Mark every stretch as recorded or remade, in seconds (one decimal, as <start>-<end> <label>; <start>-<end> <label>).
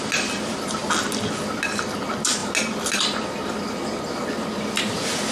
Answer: 0.0-5.3 recorded